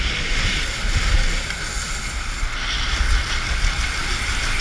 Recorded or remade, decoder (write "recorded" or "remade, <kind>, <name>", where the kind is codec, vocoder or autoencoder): recorded